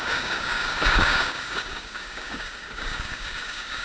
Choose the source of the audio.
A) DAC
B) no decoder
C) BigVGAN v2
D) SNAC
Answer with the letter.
A